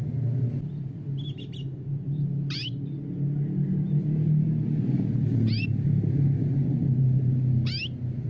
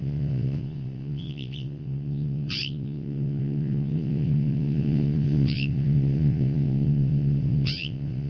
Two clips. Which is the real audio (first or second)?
first